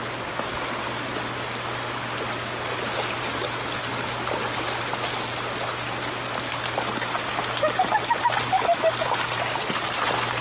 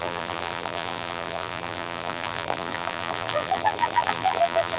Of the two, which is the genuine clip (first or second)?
first